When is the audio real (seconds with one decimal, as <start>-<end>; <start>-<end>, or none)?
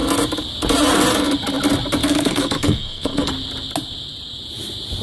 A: 0.0-2.0; 3.3-5.0